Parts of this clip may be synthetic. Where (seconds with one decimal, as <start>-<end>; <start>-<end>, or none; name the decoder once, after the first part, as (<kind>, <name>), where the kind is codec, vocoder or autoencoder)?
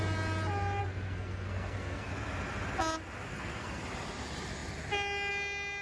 0.8-2.1 (codec, SNAC); 3.3-3.8